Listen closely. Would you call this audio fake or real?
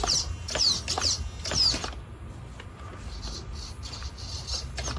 real